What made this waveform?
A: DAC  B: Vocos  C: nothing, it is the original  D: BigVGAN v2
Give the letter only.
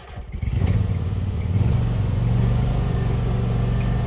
B